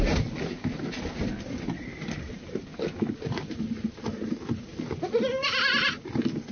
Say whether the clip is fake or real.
real